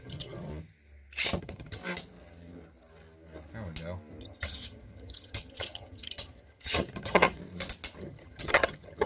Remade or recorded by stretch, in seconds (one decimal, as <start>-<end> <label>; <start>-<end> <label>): 0.0-0.5 remade; 0.5-1.4 recorded; 1.4-1.8 remade; 1.8-4.2 recorded; 4.2-7.4 remade; 7.4-8.0 recorded; 8.0-9.1 remade